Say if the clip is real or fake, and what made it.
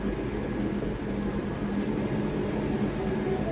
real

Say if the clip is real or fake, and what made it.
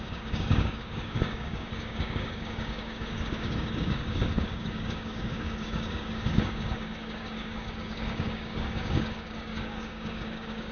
fake, codec, DAC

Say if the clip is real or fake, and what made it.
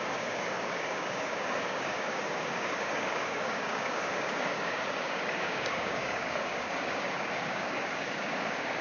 fake, codec, DAC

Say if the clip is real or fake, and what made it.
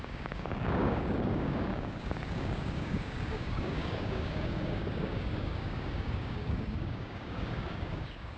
fake, codec, DAC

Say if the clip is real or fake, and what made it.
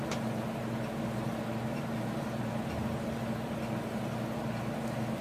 real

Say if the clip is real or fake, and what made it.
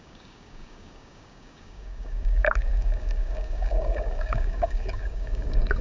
fake, codec, DAC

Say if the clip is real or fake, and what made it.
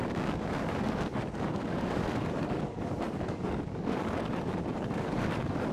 fake, codec, DAC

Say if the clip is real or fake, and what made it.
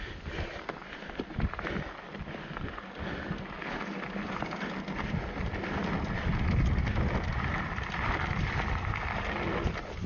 real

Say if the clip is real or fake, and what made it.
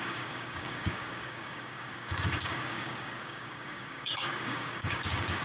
fake, codec, DAC